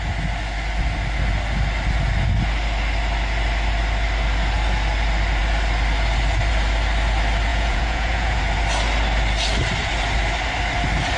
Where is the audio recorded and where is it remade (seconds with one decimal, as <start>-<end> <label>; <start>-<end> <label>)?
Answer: 0.0-7.5 recorded; 7.5-8.4 remade; 8.4-11.2 recorded